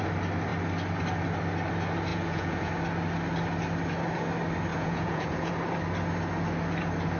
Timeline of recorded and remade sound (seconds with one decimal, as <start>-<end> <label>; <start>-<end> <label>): 0.0-2.1 recorded; 2.1-2.7 remade; 2.7-4.7 recorded; 4.7-5.5 remade; 5.5-7.2 recorded